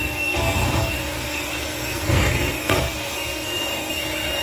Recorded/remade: remade